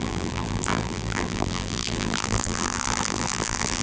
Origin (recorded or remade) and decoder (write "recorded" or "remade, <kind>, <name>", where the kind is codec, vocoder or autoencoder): remade, vocoder, BigVGAN v2